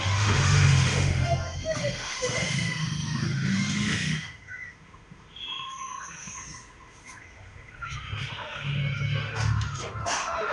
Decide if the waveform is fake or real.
fake